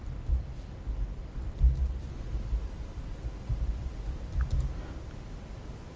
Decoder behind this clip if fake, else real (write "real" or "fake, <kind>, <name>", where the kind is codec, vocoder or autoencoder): real